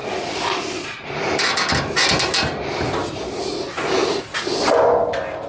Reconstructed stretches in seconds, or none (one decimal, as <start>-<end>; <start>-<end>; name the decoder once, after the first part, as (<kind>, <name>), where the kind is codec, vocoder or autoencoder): none